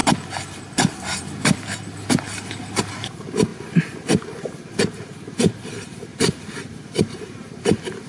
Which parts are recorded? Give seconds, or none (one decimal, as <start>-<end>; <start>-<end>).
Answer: 0.0-2.8; 6.1-6.8